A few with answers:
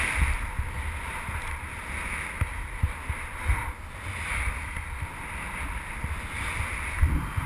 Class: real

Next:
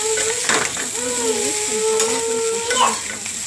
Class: real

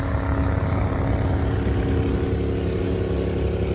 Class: real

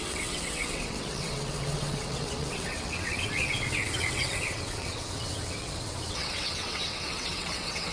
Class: fake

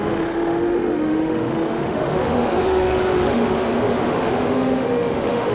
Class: fake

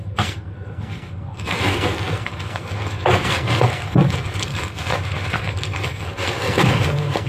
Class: fake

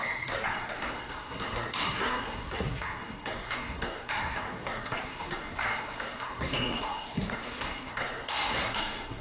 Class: fake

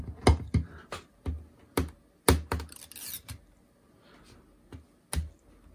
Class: real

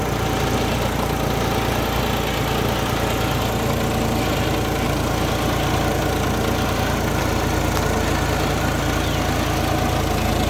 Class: real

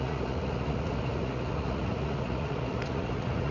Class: fake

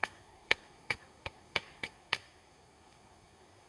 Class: fake